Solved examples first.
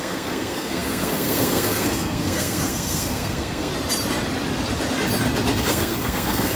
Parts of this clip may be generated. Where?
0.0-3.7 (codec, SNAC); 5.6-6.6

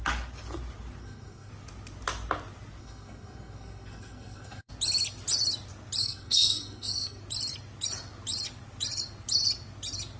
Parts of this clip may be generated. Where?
1.0-1.5 (codec, SNAC); 2.8-4.7; 6.0-7.2

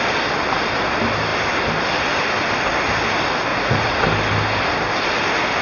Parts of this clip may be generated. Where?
3.5-4.0 (vocoder, Vocos)

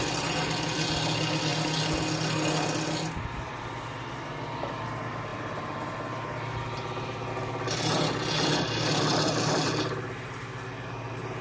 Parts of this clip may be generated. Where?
none

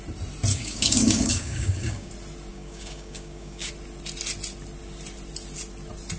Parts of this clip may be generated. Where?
0.5-2.1 (codec, DAC); 2.5-3.7